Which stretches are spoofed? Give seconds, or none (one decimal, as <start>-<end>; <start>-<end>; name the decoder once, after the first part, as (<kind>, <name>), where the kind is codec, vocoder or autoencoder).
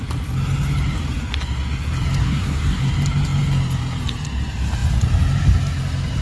2.2-2.9 (codec, SNAC)